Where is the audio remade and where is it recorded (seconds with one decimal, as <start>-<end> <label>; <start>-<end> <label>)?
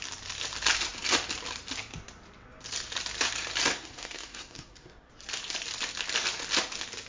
0.0-3.7 recorded; 3.7-5.1 remade; 5.1-7.1 recorded